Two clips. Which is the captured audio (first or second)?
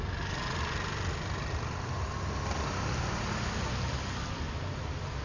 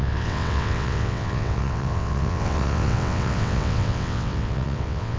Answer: first